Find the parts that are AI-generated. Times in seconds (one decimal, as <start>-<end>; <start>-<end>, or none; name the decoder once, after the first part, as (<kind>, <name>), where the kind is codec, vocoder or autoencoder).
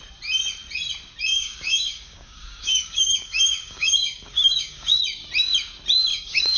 1.3-5.0 (codec, DAC); 6.1-6.6